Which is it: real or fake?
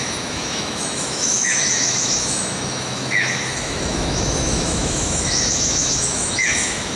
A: fake